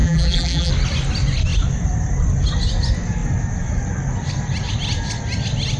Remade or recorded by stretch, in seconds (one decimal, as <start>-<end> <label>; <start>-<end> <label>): 0.0-0.7 remade; 0.7-5.8 recorded